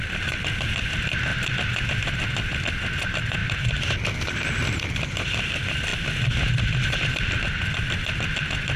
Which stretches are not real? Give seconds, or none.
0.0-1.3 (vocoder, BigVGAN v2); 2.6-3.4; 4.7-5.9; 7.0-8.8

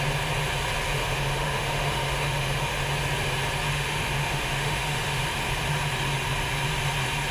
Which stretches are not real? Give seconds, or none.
1.0-2.8 (autoencoder, DAC-VAE); 3.7-5.2

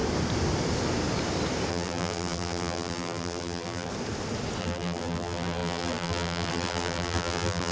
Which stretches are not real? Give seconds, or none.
1.7-3.9 (vocoder, BigVGAN v2); 4.6-7.7